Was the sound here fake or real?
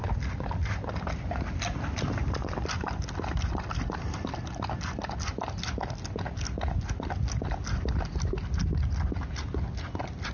real